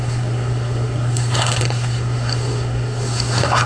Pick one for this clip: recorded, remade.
remade